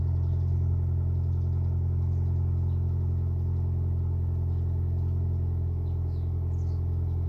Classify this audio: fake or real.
real